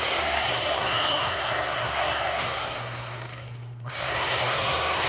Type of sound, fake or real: fake